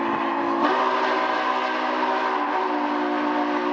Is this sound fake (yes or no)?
no